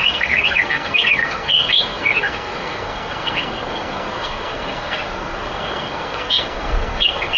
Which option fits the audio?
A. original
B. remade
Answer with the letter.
B